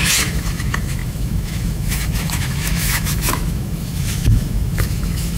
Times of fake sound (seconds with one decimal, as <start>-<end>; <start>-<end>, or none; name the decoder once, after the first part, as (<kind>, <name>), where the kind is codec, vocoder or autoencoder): 0.0-5.4 (autoencoder, DAC-VAE)